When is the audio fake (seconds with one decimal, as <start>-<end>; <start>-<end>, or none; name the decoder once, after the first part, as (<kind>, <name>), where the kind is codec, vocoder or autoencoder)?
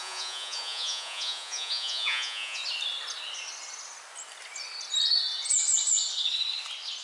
0.0-2.6 (vocoder, Vocos)